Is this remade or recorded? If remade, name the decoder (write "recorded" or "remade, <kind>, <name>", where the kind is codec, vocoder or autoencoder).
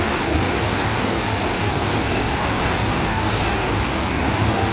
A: remade, codec, DAC